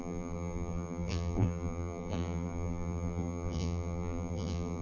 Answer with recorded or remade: remade